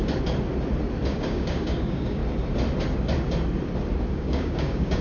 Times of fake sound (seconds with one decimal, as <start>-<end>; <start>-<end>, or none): 1.1-2.2; 4.1-5.0